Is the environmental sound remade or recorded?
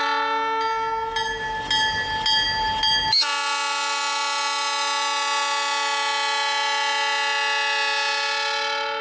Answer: recorded